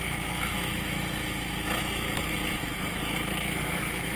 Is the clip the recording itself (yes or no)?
no